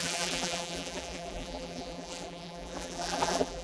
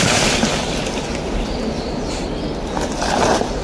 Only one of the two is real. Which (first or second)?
second